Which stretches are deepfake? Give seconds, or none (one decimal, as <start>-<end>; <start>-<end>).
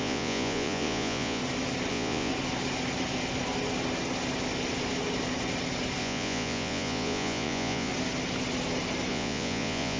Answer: 0.0-1.4; 1.9-2.3; 6.0-7.9; 9.1-10.0